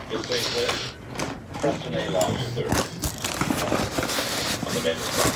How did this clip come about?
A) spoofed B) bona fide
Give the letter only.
B